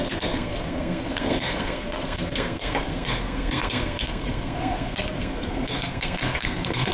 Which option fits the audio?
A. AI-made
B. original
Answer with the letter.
A